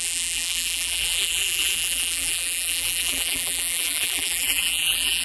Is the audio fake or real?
fake